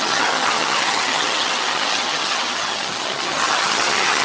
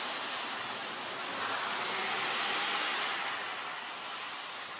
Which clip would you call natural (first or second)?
second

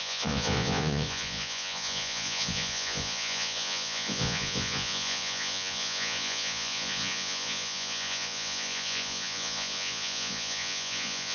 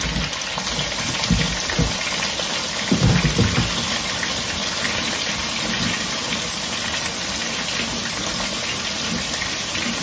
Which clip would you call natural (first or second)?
second